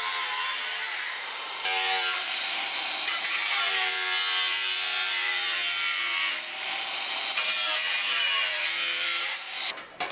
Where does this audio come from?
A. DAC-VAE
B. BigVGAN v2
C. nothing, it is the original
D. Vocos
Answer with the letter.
B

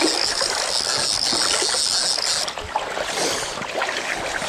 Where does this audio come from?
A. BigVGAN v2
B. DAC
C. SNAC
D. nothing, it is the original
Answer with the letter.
D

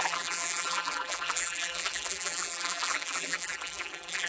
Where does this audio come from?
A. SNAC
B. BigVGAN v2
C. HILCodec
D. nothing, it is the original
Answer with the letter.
B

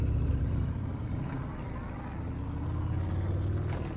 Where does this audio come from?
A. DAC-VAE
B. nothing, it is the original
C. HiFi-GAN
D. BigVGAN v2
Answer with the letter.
B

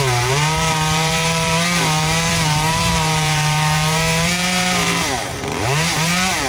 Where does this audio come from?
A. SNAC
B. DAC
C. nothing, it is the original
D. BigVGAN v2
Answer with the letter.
D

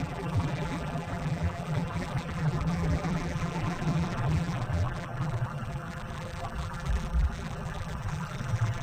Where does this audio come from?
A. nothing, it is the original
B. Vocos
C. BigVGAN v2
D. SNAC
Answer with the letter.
C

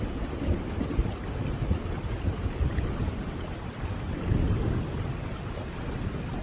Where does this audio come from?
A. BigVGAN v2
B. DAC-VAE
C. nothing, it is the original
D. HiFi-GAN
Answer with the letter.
A